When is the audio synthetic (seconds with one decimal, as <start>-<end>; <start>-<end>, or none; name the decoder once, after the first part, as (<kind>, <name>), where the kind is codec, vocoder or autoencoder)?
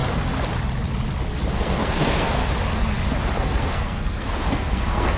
1.5-2.4 (codec, SNAC); 3.4-5.2